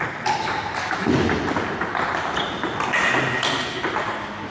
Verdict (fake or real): real